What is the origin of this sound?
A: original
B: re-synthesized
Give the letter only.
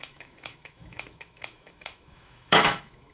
B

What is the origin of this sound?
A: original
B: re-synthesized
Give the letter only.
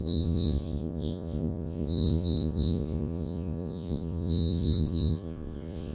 B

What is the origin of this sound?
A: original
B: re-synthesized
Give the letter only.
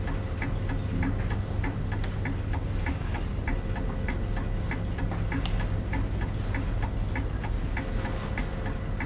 A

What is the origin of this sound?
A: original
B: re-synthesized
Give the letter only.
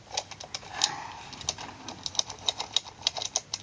A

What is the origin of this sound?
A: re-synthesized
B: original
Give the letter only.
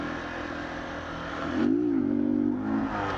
B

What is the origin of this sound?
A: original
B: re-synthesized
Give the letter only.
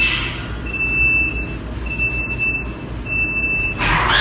A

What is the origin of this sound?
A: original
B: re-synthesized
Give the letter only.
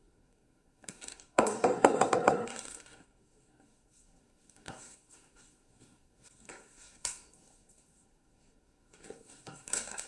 B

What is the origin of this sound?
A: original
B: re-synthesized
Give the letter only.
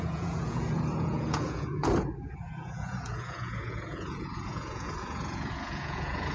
B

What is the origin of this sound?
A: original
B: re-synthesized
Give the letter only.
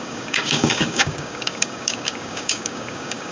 B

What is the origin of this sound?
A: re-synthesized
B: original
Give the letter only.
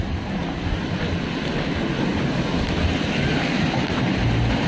B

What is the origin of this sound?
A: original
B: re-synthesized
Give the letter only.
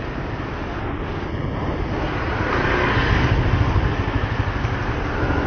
A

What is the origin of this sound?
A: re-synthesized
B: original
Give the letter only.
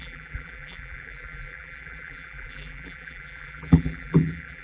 A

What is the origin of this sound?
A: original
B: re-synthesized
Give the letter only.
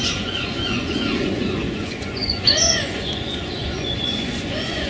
B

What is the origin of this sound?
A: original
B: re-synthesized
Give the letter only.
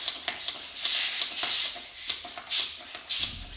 A